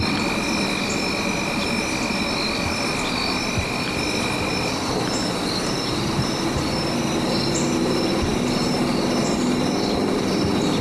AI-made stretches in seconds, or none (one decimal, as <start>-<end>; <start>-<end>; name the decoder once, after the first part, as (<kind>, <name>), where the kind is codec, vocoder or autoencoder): none